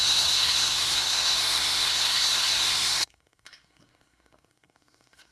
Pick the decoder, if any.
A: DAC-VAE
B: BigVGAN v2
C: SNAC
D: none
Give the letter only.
C